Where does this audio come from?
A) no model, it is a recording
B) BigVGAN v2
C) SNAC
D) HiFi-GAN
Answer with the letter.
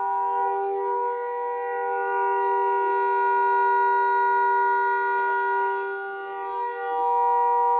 A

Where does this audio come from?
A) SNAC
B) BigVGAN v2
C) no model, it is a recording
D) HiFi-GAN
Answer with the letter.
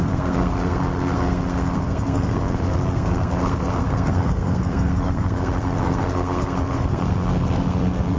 A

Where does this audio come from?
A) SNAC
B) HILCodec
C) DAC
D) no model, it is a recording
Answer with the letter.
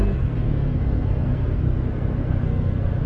A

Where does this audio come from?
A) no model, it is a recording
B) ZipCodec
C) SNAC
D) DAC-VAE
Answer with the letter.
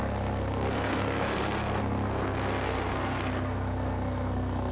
C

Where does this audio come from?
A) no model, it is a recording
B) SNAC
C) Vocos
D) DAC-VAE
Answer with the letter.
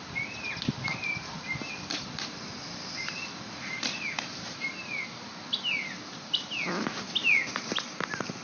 A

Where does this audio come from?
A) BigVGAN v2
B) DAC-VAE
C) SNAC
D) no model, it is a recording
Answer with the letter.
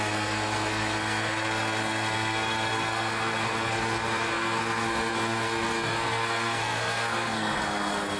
C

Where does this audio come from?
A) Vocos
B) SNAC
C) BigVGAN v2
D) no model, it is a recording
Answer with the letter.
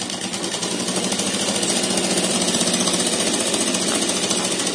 D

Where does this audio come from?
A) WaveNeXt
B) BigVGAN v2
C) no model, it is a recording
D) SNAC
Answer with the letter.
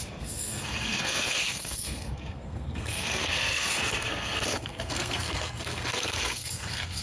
D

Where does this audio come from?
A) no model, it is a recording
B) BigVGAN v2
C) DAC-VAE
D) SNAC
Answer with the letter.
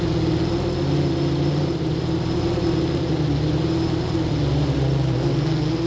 A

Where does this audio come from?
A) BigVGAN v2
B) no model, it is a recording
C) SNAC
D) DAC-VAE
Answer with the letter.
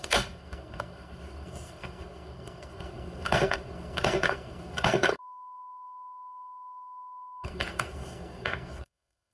C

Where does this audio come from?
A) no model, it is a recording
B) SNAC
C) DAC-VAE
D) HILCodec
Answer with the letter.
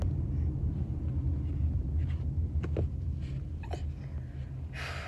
A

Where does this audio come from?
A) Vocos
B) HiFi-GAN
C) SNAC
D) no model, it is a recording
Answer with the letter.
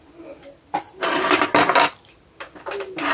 D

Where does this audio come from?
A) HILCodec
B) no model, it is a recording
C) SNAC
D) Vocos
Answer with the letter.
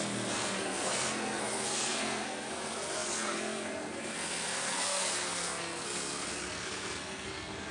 C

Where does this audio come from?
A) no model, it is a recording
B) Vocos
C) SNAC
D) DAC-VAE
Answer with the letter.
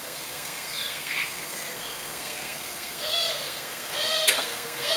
C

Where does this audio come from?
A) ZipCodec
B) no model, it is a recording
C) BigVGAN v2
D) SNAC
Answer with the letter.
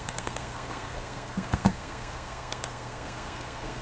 D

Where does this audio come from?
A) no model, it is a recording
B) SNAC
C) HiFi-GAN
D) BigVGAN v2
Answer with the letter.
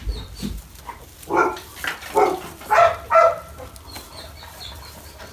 A